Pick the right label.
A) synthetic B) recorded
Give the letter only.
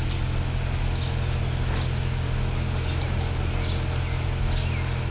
B